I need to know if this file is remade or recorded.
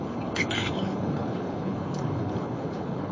remade